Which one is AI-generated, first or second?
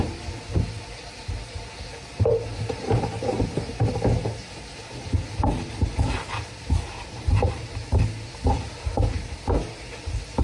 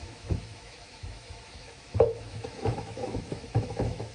second